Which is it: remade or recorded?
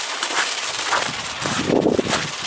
recorded